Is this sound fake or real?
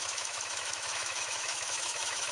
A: fake